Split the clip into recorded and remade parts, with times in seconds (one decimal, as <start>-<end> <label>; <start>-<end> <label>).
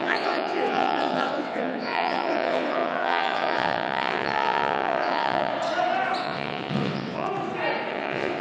0.0-5.5 remade; 5.5-6.2 recorded; 6.2-7.3 remade; 7.3-7.9 recorded; 7.9-8.4 remade